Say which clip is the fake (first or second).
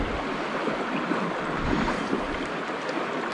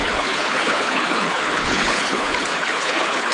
second